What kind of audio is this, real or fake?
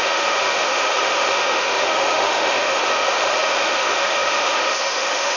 fake